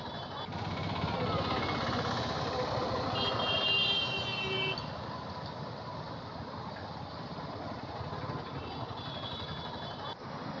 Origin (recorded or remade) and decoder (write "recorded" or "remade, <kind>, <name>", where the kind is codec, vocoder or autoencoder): recorded